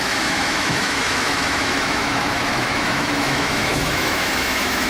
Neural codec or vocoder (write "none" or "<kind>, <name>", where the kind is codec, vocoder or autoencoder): autoencoder, DAC-VAE